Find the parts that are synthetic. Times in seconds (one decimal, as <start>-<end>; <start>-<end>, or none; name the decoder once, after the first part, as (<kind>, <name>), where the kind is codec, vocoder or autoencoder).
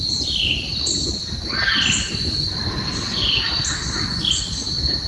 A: none